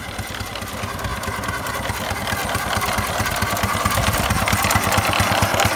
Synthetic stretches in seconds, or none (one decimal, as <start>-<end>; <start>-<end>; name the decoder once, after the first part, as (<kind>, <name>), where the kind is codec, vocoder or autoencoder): none